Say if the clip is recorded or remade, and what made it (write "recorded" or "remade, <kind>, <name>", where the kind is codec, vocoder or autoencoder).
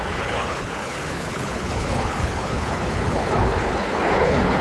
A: remade, codec, HILCodec